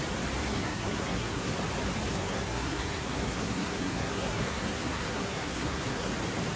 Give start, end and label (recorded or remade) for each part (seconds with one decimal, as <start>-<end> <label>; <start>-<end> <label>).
0.0-0.4 recorded; 0.4-1.5 remade; 1.5-2.1 recorded; 2.1-6.1 remade; 6.1-6.6 recorded